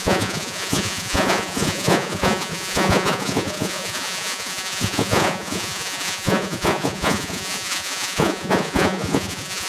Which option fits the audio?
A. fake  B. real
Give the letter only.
A